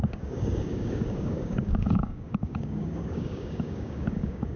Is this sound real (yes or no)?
no